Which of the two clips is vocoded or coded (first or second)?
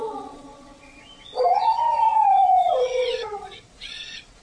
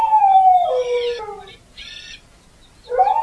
first